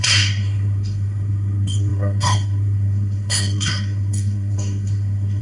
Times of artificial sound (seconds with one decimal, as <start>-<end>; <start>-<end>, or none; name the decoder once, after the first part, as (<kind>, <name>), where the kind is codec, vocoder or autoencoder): 0.0-5.4 (codec, SNAC)